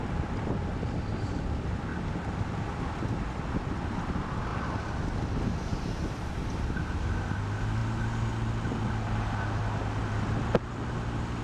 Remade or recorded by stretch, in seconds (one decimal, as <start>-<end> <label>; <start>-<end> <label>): 0.0-11.4 recorded